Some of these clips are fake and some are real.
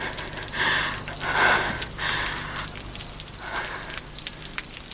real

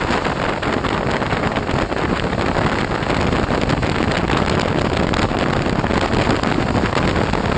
real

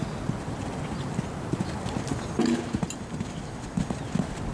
real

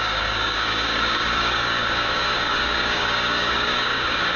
fake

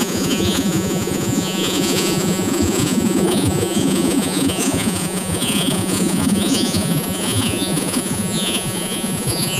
fake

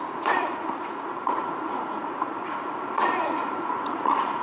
fake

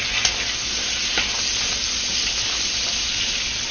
real